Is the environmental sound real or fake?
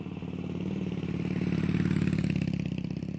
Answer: fake